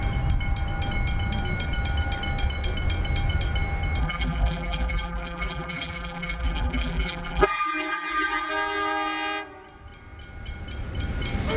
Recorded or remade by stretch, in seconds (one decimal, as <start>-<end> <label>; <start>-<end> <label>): 0.0-4.0 recorded; 4.0-8.5 remade; 8.5-11.6 recorded